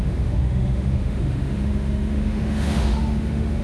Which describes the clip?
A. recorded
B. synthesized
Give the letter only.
B